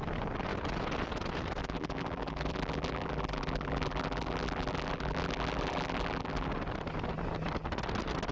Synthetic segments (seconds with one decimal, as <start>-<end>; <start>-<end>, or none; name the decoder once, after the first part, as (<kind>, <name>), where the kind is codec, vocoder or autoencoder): 1.6-6.5 (vocoder, BigVGAN v2)

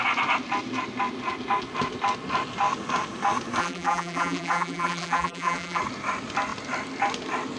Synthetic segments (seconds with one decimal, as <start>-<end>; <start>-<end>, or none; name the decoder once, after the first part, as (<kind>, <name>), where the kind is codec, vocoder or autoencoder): 3.6-5.8 (vocoder, BigVGAN v2)

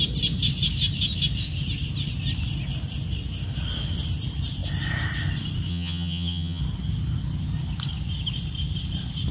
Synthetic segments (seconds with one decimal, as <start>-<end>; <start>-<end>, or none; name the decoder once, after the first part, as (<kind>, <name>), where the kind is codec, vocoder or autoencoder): 5.7-6.6 (vocoder, HiFi-GAN)

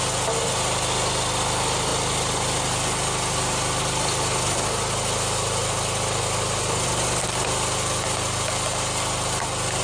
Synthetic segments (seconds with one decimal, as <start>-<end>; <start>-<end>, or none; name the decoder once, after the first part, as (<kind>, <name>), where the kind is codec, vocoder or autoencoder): none

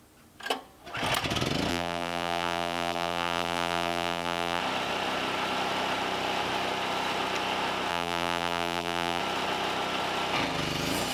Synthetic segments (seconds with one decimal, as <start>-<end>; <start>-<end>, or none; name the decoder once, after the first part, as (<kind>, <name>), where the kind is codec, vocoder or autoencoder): 1.7-4.6 (vocoder, BigVGAN v2); 7.9-9.2

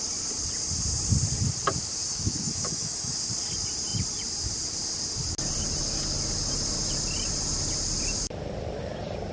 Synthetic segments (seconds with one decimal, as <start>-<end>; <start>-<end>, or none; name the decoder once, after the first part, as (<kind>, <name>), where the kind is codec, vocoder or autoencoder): 2.1-3.1 (autoencoder, DAC-VAE)